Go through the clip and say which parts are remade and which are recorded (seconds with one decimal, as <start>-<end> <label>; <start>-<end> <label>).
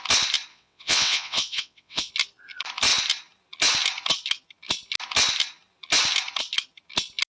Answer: 0.0-0.5 recorded; 0.5-2.1 remade; 2.1-7.4 recorded